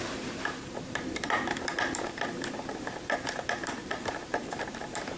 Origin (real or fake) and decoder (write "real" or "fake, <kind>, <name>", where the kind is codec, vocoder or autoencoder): fake, vocoder, BigVGAN v2